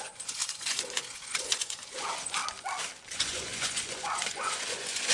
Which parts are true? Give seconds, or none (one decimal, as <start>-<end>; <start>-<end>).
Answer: 2.4-3.0